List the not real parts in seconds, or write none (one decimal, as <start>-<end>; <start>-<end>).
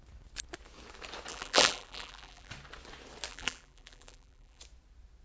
1.3-2.5; 3.3-4.6